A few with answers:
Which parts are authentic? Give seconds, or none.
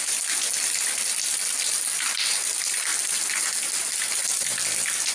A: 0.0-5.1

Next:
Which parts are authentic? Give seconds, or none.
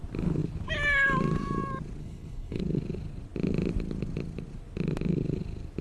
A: 0.0-2.0; 2.6-5.8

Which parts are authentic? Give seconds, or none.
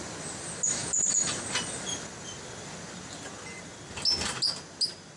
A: 0.0-5.2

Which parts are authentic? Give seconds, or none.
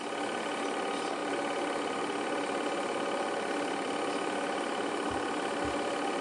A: 0.0-6.2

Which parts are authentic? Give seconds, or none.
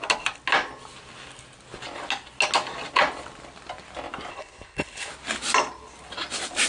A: 0.0-4.3; 5.1-6.7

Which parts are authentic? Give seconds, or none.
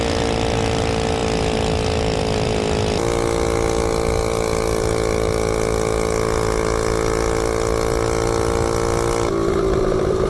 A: 0.0-10.3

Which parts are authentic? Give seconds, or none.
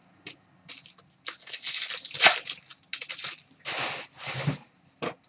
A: 0.0-1.4; 1.9-5.3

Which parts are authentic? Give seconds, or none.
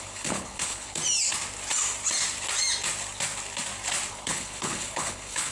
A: 1.0-4.1